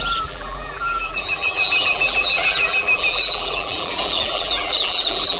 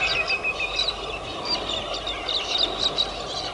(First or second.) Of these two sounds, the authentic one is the second